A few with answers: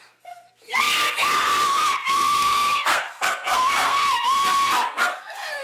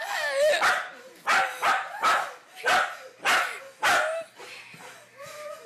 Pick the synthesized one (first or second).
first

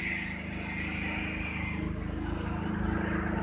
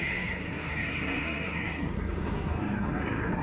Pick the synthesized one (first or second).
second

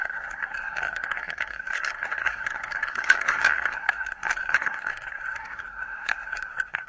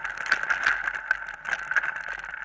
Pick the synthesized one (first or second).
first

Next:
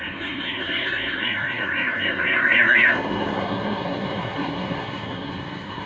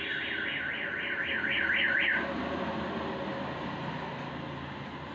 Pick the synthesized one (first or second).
first